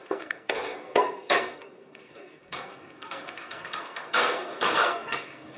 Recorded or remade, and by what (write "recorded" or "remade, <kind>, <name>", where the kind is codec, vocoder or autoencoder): remade, codec, SNAC